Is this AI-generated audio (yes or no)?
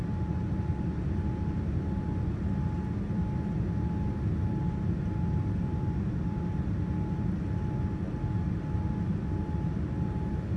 no